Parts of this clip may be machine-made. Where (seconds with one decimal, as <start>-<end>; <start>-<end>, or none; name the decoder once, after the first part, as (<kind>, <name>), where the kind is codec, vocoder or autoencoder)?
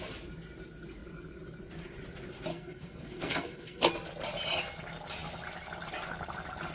2.5-3.9 (codec, SNAC)